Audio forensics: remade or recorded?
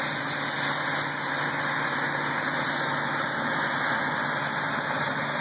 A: recorded